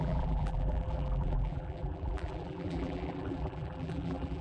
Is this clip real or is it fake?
fake